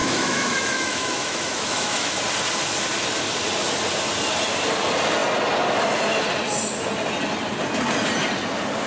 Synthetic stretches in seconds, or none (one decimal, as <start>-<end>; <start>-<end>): 0.0-2.2